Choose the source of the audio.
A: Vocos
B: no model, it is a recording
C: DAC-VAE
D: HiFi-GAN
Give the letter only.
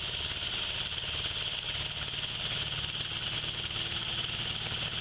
B